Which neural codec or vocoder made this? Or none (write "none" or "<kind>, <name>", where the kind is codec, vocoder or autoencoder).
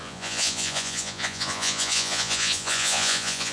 vocoder, Vocos